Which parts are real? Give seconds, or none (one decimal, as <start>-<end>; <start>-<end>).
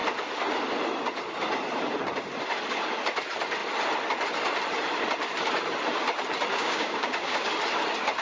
0.0-6.5; 7.5-8.2